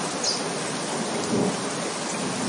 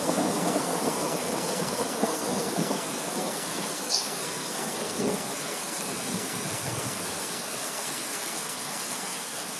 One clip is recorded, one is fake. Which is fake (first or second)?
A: second